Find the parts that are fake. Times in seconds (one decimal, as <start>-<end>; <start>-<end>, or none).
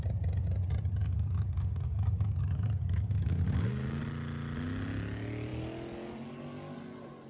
1.0-4.0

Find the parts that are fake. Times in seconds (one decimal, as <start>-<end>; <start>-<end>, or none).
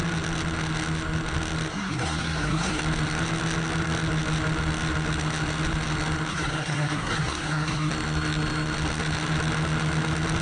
1.7-2.8; 6.3-7.9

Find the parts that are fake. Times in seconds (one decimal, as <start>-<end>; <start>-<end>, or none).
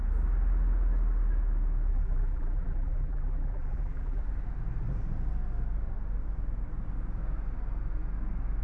1.9-4.2